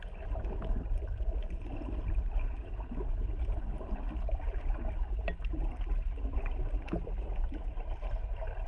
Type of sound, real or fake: real